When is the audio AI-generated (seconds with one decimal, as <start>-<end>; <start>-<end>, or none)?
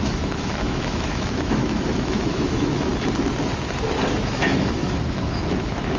0.0-2.9; 4.2-6.0